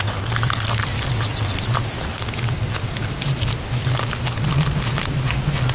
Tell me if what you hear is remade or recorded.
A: recorded